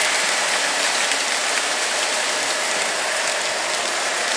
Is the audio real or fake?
real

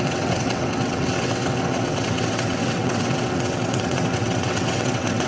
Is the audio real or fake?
fake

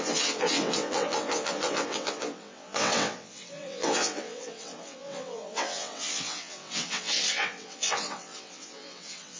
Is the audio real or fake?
fake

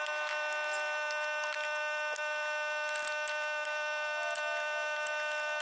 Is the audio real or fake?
real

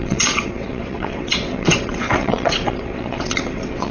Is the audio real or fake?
fake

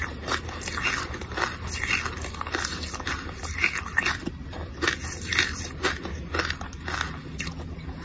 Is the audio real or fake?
real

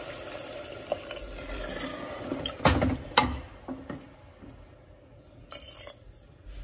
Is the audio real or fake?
real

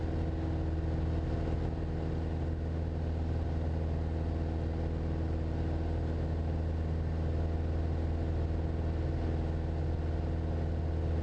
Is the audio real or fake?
real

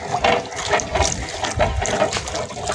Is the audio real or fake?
real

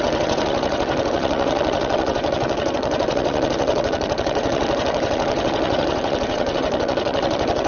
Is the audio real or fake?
fake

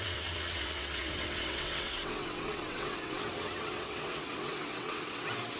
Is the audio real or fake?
fake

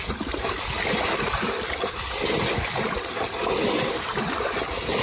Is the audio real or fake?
real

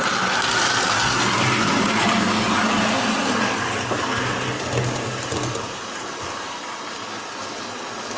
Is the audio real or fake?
real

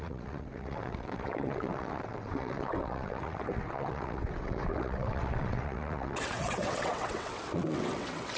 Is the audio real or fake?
fake